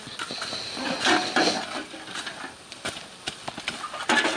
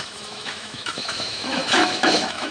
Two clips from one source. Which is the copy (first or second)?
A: second